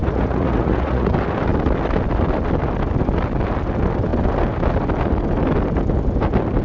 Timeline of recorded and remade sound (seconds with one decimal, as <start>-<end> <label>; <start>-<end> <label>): 0.0-1.1 remade; 1.1-6.6 recorded